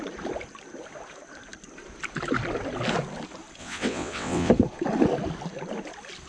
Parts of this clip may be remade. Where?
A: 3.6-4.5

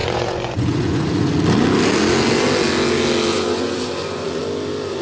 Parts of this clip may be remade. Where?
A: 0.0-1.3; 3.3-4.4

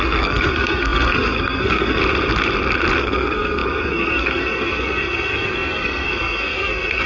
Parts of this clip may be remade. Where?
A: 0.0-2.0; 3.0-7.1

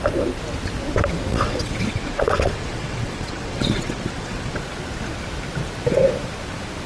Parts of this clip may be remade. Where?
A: 1.3-4.6

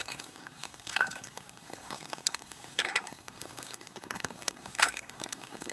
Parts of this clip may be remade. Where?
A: 0.0-5.7